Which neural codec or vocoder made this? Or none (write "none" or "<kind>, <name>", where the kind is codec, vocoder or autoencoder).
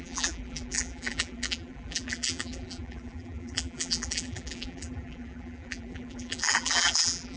vocoder, BigVGAN v2